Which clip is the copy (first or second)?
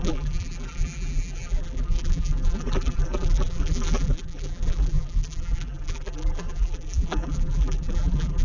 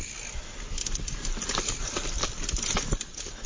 first